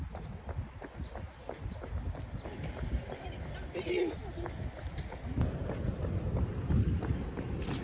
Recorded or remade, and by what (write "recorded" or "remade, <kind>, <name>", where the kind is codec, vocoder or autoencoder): recorded